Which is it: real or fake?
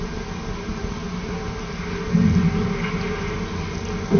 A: real